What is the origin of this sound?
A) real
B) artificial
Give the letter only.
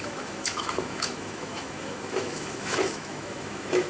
B